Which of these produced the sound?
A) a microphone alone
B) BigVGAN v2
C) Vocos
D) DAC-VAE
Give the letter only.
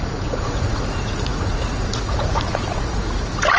C